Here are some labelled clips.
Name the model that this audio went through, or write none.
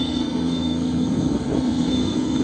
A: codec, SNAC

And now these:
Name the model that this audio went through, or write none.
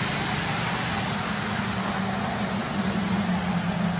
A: none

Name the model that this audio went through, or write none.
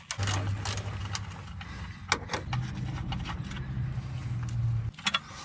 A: none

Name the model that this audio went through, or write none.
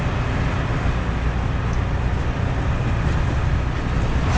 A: none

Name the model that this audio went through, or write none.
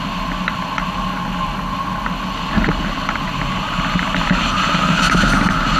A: none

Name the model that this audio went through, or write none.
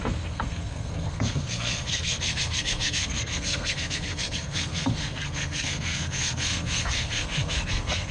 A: codec, SNAC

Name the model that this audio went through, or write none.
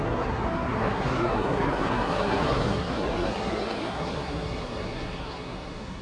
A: codec, SNAC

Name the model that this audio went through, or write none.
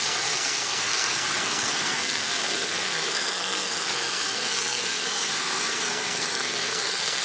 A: codec, SNAC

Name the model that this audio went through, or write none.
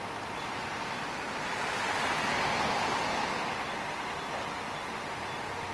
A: none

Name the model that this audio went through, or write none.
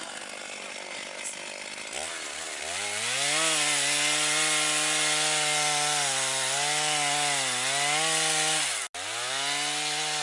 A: none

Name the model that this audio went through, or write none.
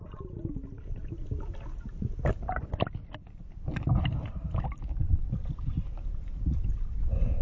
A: none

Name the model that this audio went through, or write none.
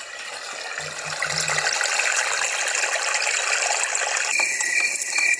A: none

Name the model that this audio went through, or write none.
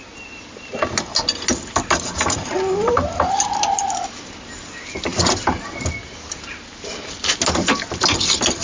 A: none